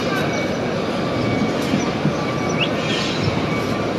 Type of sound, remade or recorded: recorded